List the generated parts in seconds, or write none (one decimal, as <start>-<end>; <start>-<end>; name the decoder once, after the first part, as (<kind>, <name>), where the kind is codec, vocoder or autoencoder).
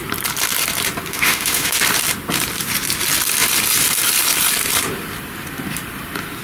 1.1-1.8 (autoencoder, DAC-VAE)